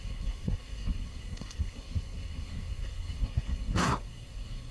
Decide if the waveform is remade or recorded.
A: remade